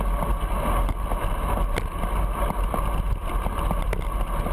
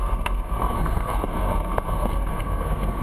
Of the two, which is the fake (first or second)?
second